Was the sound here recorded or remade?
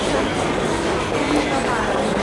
recorded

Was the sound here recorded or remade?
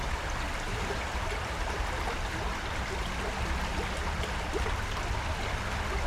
recorded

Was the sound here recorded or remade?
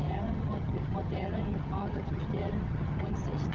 remade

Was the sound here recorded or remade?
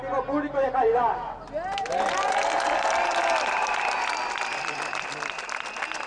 recorded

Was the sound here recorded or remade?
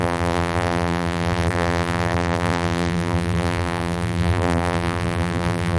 remade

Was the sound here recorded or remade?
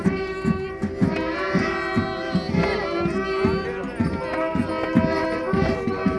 recorded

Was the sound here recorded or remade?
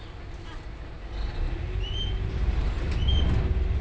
recorded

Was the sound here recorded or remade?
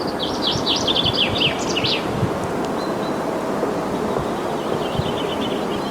recorded